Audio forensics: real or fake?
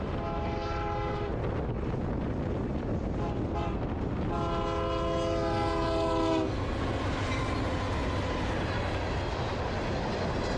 real